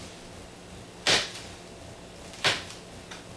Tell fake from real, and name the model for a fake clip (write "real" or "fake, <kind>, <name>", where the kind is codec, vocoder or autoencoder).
real